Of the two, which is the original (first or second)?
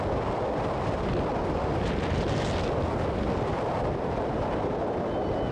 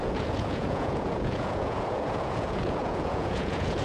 first